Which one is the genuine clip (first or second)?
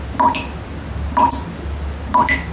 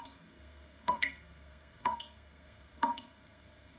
first